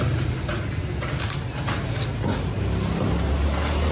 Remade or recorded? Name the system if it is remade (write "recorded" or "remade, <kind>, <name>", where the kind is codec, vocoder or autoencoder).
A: recorded